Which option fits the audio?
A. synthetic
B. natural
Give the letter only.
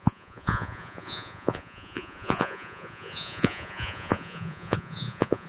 A